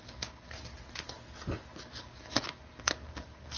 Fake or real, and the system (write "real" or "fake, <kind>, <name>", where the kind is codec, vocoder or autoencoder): real